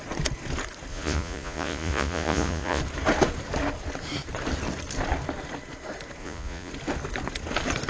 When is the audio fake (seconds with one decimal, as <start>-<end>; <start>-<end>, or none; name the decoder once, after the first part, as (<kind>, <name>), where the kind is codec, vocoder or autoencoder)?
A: 0.9-2.8 (vocoder, Vocos); 6.2-6.7